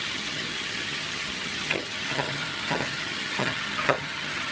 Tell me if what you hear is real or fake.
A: fake